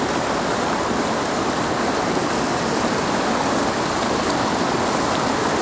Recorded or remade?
recorded